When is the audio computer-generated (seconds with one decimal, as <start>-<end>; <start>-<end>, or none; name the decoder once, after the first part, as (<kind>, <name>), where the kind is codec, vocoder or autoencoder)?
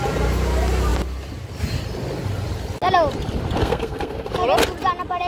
3.6-4.3 (codec, SNAC)